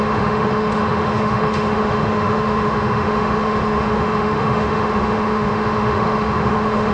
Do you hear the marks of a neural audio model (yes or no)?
yes